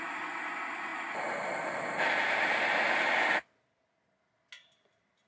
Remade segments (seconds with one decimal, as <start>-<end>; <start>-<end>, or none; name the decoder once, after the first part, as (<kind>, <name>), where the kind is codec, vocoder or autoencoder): none